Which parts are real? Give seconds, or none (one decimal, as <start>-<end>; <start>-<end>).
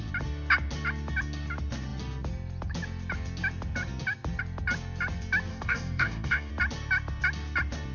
0.0-5.5; 6.5-7.9